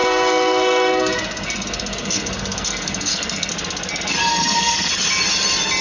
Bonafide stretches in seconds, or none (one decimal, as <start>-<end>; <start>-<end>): 3.5-4.2; 4.9-5.8